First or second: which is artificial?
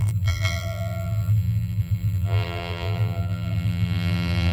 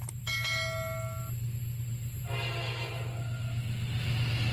first